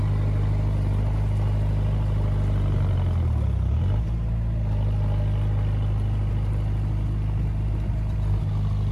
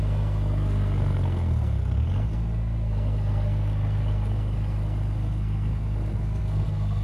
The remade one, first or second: second